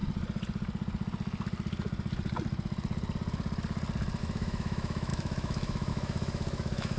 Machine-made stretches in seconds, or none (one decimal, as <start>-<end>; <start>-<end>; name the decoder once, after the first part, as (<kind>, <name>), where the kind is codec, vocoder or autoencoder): 4.2-7.0 (autoencoder, DAC-VAE)